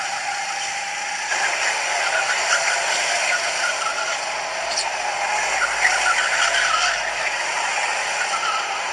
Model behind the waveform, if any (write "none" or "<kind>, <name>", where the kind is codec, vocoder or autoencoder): none